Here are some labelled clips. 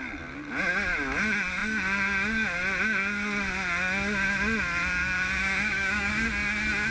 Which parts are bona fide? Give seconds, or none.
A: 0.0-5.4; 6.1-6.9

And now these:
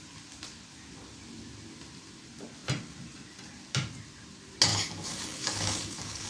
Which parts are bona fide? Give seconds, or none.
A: 0.0-4.7

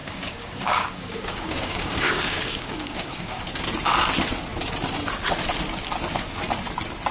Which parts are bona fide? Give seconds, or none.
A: 3.4-7.1